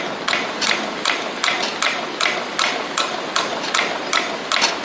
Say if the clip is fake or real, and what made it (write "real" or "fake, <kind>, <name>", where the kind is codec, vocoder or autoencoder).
real